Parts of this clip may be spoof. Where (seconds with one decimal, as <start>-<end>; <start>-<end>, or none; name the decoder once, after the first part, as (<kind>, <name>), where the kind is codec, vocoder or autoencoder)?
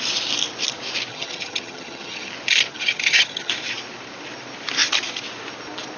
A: 1.1-2.3 (vocoder, HiFi-GAN); 2.7-3.5